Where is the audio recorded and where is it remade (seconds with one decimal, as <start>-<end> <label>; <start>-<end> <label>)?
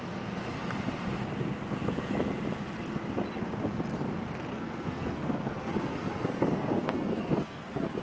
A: 0.0-4.5 recorded; 4.5-8.0 remade